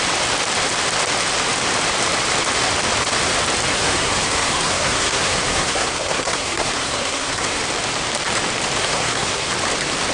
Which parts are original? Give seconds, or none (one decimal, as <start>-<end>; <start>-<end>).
0.0-3.7; 7.6-8.8; 9.5-10.1